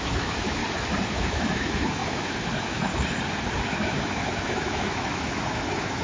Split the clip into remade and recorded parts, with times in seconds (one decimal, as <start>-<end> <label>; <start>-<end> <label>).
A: 0.0-0.6 remade; 0.6-1.1 recorded; 1.1-2.9 remade; 2.9-3.7 recorded; 3.7-6.0 remade